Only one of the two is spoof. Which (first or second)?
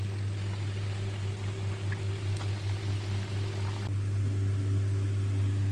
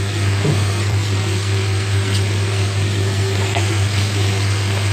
second